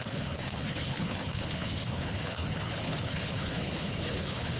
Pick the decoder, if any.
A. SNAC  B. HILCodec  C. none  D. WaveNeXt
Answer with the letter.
B